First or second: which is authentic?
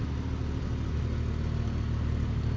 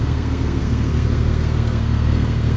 first